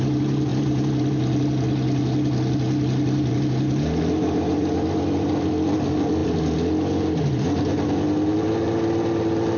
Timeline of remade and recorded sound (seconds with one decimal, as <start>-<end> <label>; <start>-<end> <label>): 0.0-9.6 recorded